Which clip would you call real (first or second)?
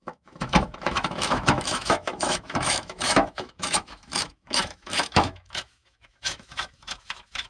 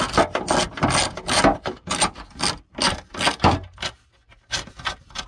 second